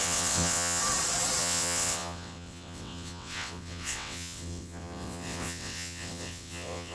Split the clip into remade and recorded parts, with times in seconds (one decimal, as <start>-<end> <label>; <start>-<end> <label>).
0.0-0.8 remade; 0.8-1.4 recorded; 1.4-6.9 remade